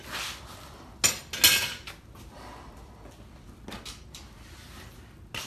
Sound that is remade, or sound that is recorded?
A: recorded